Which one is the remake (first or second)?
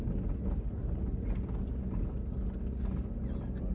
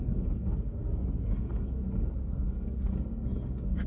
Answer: second